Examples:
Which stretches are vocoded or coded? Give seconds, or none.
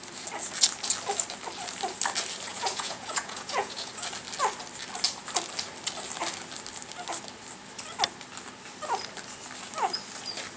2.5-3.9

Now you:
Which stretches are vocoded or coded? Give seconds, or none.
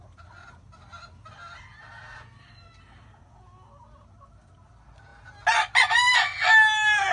none